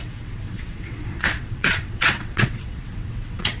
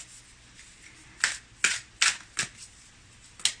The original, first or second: second